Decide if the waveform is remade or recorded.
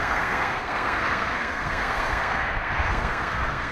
remade